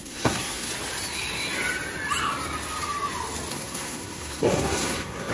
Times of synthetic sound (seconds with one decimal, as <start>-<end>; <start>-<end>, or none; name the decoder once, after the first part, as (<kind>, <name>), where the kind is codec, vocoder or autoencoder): 0.0-0.7 (codec, SNAC); 3.5-5.3